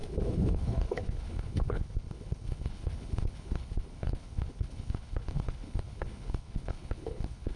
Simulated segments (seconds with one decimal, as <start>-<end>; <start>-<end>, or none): 0.0-7.6